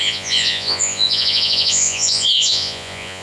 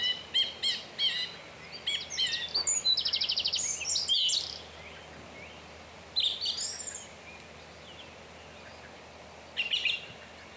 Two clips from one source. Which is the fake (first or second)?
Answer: first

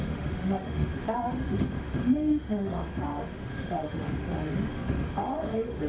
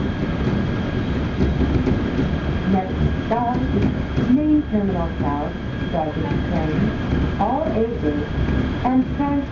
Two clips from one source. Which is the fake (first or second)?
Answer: first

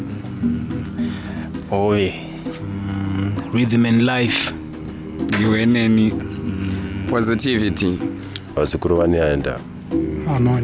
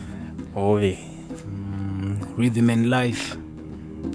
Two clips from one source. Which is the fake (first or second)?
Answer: second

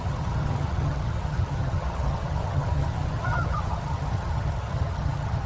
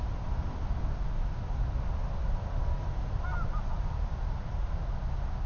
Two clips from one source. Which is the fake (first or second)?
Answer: first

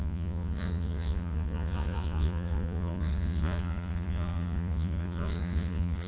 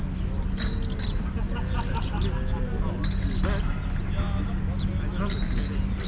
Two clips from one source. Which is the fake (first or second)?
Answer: first